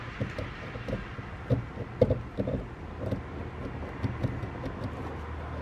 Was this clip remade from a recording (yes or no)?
no